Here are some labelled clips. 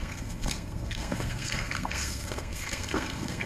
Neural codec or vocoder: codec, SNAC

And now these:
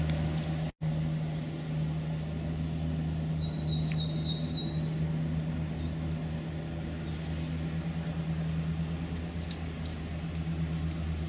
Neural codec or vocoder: none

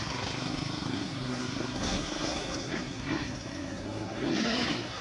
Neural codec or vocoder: codec, SNAC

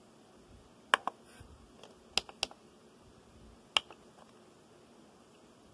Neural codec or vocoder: none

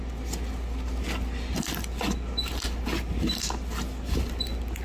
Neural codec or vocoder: none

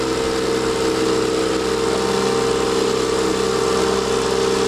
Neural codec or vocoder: none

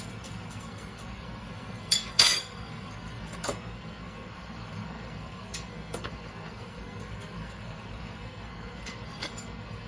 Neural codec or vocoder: codec, SNAC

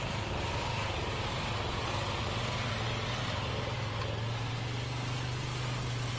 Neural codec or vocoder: none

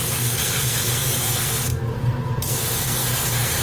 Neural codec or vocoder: codec, SNAC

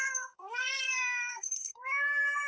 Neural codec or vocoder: codec, SNAC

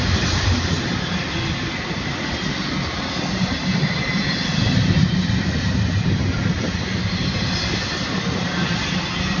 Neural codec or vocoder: none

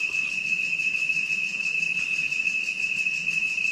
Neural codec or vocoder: none